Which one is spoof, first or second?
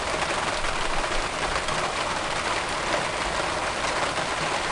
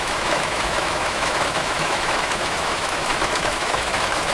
second